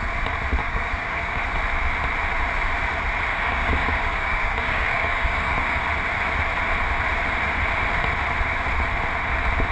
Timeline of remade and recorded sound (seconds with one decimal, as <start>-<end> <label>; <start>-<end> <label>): 0.0-0.6 recorded; 0.6-1.4 remade; 1.4-3.3 recorded; 3.3-5.8 remade; 5.8-9.7 recorded